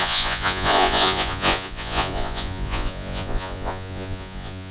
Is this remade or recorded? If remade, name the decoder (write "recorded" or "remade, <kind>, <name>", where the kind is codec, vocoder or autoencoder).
remade, vocoder, Vocos